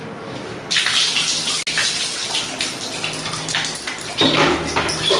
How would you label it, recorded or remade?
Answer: recorded